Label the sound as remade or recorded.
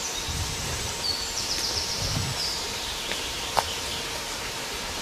remade